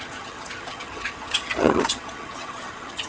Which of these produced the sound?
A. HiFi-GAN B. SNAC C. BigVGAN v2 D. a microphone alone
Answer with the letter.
A